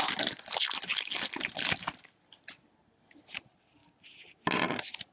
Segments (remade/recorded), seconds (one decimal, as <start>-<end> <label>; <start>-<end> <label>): 0.0-5.1 recorded